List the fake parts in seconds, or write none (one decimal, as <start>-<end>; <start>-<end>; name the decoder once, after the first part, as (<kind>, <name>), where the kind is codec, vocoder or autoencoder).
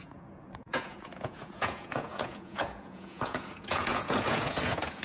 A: 0.0-5.0 (vocoder, Vocos)